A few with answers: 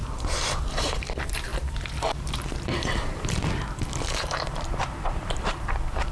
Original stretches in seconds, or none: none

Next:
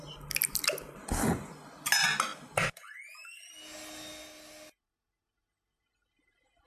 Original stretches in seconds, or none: 0.0-6.7

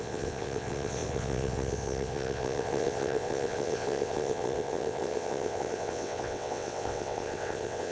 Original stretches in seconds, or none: none

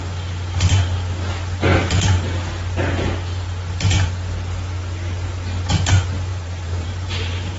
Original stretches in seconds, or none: 0.0-6.3

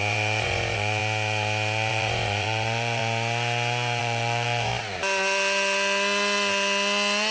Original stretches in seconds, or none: 1.0-1.9; 3.0-4.0; 4.7-7.3

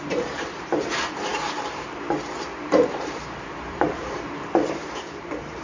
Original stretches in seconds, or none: none

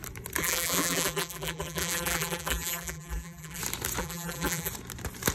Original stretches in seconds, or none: 0.0-0.4; 3.6-4.0; 4.7-5.3

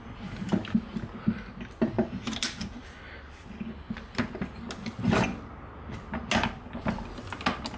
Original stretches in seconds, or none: 0.0-7.8